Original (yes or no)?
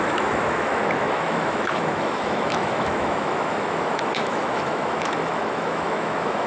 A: no